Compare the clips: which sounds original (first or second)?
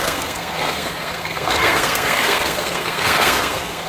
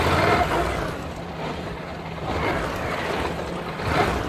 second